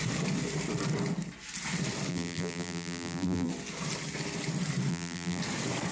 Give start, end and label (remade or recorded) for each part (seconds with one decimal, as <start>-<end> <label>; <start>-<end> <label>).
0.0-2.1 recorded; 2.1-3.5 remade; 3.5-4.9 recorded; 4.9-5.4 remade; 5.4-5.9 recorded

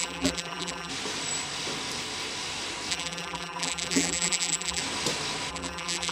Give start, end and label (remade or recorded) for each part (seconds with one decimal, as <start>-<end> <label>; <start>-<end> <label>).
0.0-0.9 remade; 0.9-2.9 recorded; 2.9-4.8 remade; 4.8-5.5 recorded; 5.5-6.1 remade

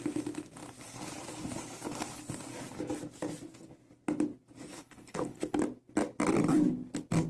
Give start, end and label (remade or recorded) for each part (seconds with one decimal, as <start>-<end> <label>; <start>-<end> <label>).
0.0-4.7 recorded; 4.7-5.6 remade; 5.6-7.3 recorded

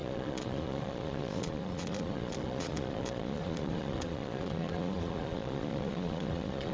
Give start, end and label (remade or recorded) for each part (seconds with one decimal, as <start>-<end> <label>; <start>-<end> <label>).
0.0-6.7 remade

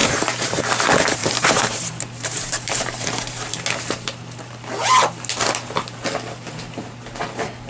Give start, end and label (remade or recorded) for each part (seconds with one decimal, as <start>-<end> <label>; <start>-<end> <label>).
0.0-0.6 remade; 0.6-1.2 recorded; 1.2-3.5 remade; 3.5-7.7 recorded

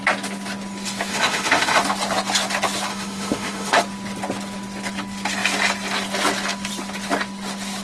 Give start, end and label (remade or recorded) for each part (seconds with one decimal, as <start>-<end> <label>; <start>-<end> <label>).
0.0-1.1 recorded; 1.1-1.8 remade; 1.8-2.9 recorded; 2.9-3.8 remade; 3.8-7.8 recorded

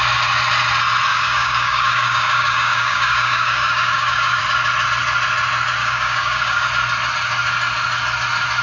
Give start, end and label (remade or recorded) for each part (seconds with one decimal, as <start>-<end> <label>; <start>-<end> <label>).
0.0-1.1 recorded; 1.1-4.4 remade; 4.4-5.8 recorded; 5.8-6.7 remade; 6.7-8.6 recorded